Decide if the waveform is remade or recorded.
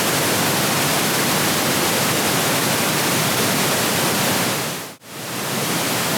recorded